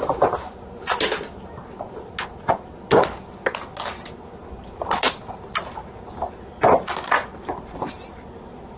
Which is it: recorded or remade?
recorded